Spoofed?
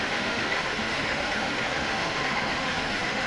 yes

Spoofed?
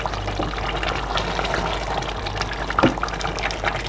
yes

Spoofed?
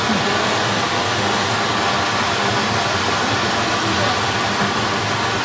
no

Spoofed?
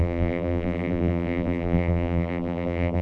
yes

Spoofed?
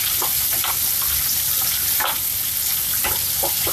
no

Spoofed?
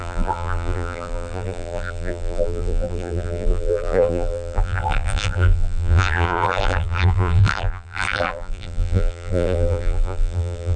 yes